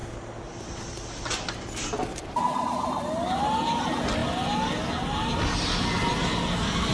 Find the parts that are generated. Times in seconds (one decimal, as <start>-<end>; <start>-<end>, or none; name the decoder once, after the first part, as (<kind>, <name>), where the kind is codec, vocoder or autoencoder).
2.1-3.0 (vocoder, BigVGAN v2)